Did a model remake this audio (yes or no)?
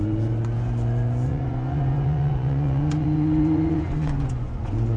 yes